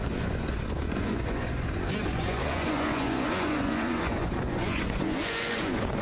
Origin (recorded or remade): remade